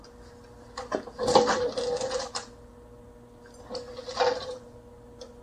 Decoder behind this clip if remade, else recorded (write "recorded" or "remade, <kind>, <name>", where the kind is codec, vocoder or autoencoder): recorded